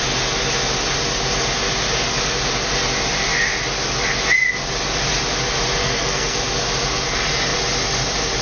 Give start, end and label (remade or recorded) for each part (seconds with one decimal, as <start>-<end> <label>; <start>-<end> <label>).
0.0-5.8 recorded; 5.8-6.4 remade; 6.4-8.4 recorded